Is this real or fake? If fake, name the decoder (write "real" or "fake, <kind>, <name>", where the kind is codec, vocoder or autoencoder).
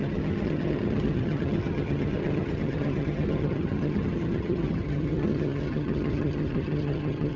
fake, vocoder, HiFi-GAN